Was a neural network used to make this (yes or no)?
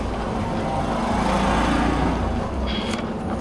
no